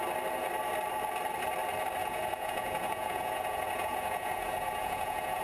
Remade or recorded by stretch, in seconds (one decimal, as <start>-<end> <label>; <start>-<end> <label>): 0.0-2.0 recorded; 2.0-5.4 remade

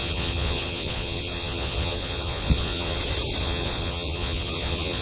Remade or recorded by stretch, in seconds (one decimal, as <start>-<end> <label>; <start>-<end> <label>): 0.0-3.0 remade; 3.0-3.4 recorded; 3.4-5.0 remade

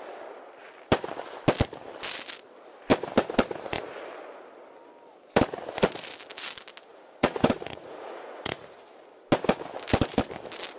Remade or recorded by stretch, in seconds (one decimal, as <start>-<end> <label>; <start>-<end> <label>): 0.0-6.9 recorded; 6.9-8.6 remade; 8.6-10.8 recorded

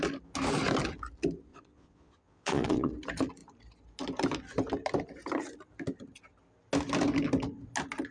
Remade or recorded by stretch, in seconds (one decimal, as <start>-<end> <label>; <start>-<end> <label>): 0.0-1.5 recorded; 1.5-2.9 remade; 2.9-8.1 recorded

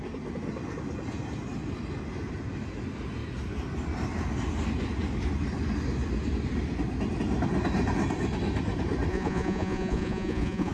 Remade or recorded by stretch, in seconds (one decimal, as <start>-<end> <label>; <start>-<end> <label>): 0.0-9.1 recorded; 9.1-10.7 remade

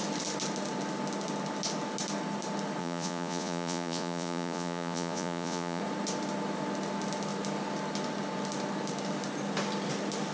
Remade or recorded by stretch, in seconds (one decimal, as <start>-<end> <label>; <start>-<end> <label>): 0.0-2.8 recorded; 2.8-5.8 remade; 5.8-10.3 recorded